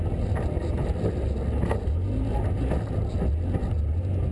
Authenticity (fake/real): real